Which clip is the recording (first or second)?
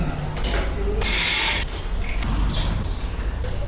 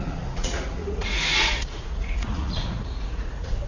first